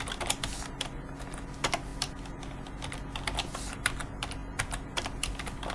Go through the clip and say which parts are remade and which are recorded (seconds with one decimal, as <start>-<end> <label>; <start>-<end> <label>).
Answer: 0.0-5.7 recorded

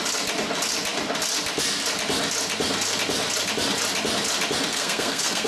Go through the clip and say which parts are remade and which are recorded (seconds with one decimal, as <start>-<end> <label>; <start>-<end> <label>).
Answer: 0.0-4.7 recorded; 4.7-5.5 remade